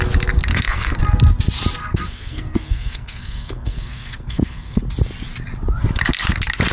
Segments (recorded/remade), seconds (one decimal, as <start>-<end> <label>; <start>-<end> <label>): 0.0-0.5 recorded; 0.5-1.0 remade; 1.0-1.8 recorded; 1.8-4.8 remade; 4.8-6.7 recorded